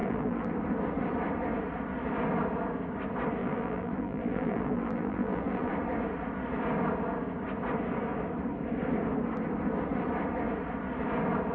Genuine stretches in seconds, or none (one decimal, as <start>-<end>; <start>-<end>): 0.5-3.4; 5.7-11.5